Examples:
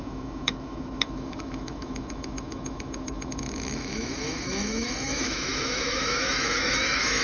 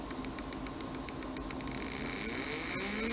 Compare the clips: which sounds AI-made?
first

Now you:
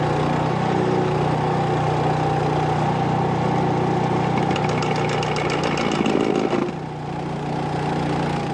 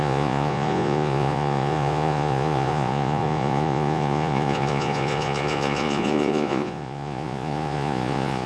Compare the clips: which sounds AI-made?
second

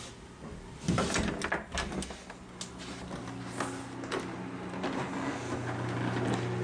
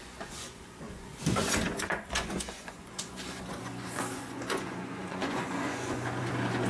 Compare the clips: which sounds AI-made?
second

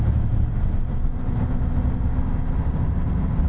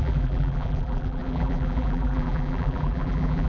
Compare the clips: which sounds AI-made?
second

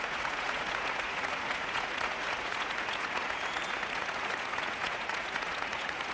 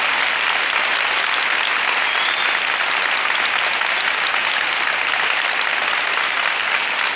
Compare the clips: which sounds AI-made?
first